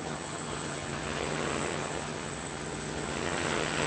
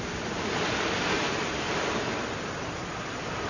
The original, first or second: second